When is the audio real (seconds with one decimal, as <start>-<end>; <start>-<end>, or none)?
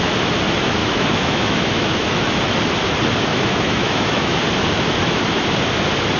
0.0-0.8; 2.4-3.3; 4.4-6.2